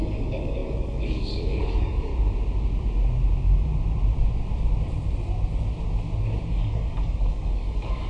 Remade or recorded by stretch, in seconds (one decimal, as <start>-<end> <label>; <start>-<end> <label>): 0.0-2.1 remade; 2.1-6.5 recorded; 6.5-8.1 remade